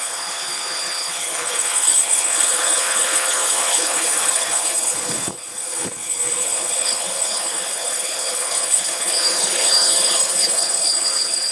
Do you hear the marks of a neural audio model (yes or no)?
yes